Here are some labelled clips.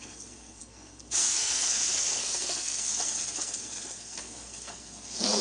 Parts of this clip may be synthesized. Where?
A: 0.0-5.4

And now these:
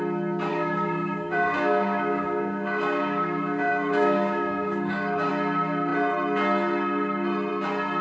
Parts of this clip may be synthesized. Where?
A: 0.5-5.3

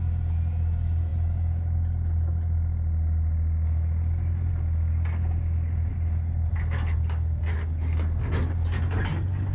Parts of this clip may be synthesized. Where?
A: none

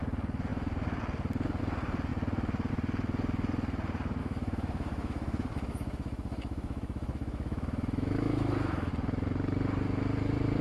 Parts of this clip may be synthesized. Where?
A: 4.2-8.9

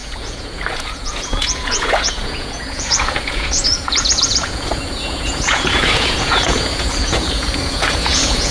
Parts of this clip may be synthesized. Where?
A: 0.0-8.5

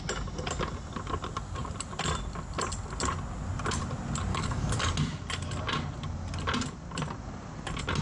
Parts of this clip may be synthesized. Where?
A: 4.3-4.9

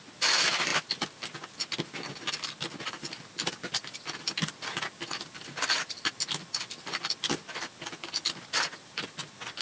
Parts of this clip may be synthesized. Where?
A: none

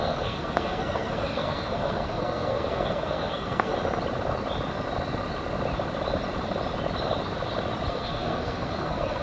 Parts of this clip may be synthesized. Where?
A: 0.0-3.7; 7.9-9.2